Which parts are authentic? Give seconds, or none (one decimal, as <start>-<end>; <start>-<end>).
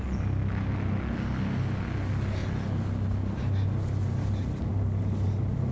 0.0-5.7